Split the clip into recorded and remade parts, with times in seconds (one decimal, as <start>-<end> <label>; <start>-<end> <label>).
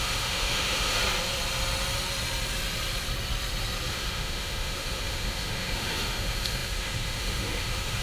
0.0-1.0 remade; 1.0-3.9 recorded; 3.9-8.0 remade